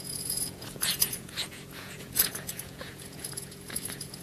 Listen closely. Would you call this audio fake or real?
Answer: fake